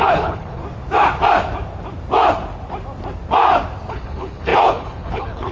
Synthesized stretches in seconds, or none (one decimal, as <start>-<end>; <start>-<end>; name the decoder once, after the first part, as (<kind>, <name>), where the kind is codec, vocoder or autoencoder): 0.0-0.6 (codec, HILCodec); 3.9-5.5